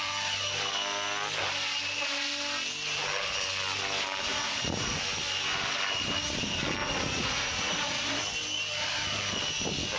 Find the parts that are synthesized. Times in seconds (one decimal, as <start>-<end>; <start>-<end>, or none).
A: 4.3-5.0; 6.8-8.2